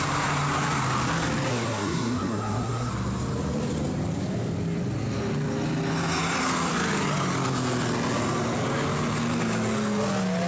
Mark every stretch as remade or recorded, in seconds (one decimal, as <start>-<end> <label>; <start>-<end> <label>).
0.0-1.5 recorded; 1.5-2.9 remade; 2.9-10.5 recorded